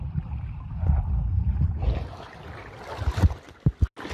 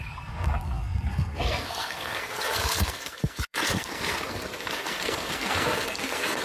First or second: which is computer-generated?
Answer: second